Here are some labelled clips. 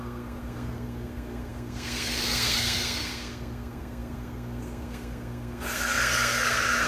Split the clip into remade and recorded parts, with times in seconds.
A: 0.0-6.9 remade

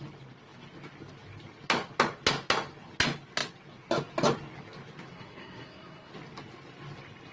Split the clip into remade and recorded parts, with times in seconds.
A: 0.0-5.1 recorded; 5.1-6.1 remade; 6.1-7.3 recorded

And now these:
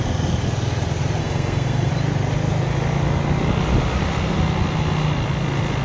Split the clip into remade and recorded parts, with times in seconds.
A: 0.0-1.2 recorded; 1.2-1.9 remade; 1.9-5.8 recorded

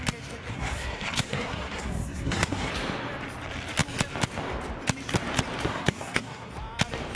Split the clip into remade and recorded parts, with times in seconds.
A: 0.0-0.5 recorded; 0.5-2.7 remade; 2.7-5.7 recorded; 5.7-6.5 remade; 6.5-7.2 recorded

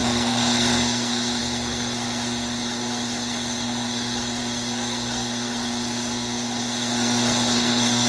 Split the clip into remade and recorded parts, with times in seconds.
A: 0.0-8.1 remade

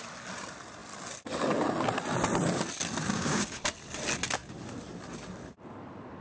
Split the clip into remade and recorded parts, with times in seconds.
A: 0.0-3.1 recorded; 3.1-3.6 remade; 3.6-6.2 recorded

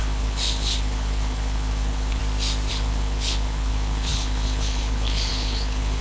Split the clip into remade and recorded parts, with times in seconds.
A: 0.0-2.2 remade; 2.2-2.7 recorded; 2.7-6.0 remade

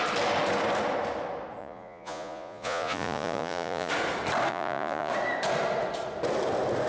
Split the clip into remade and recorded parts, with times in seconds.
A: 0.0-1.6 recorded; 1.6-3.9 remade; 3.9-4.5 recorded; 4.5-5.1 remade; 5.1-6.9 recorded